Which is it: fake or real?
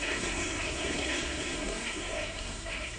fake